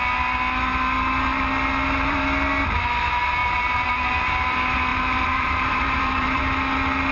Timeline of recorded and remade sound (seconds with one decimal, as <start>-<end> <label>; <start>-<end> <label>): 0.0-3.4 recorded; 3.4-4.2 remade; 4.2-4.9 recorded; 4.9-6.4 remade; 6.4-7.1 recorded